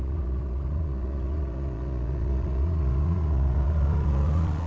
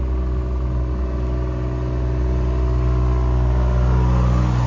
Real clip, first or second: second